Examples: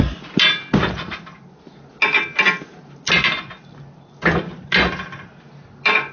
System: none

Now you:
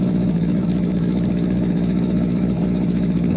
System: autoencoder, DAC-VAE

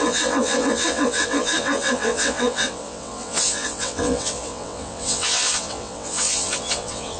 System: vocoder, WaveNeXt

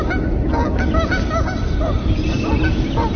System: none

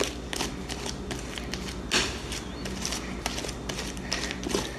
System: none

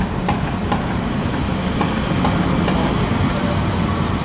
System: none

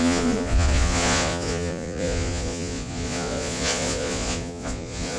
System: vocoder, Vocos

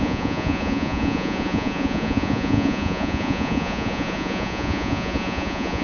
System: vocoder, Vocos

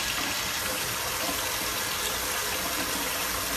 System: none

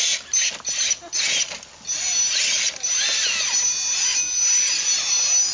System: none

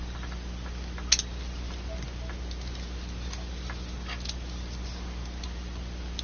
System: none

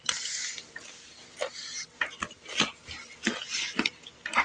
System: none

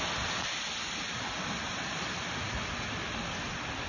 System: none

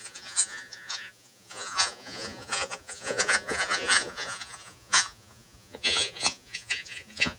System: vocoder, Vocos